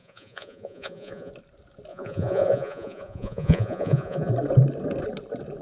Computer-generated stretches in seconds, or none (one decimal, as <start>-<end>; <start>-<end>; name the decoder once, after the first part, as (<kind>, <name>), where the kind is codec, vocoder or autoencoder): 0.0-1.3 (vocoder, Vocos); 1.9-4.3